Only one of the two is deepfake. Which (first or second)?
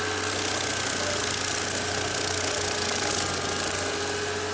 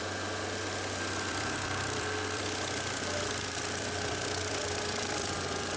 second